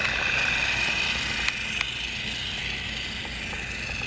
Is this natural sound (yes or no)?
yes